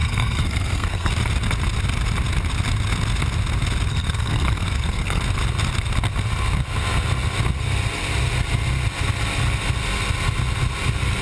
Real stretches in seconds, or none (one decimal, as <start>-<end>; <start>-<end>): 1.1-3.9; 5.2-11.2